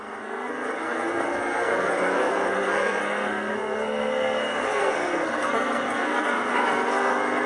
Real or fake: fake